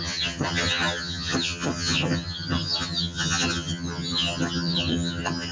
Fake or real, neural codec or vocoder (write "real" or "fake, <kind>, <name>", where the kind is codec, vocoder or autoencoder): fake, vocoder, HiFi-GAN